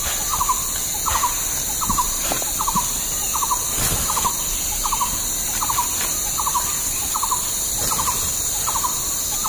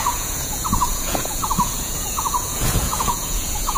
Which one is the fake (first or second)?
second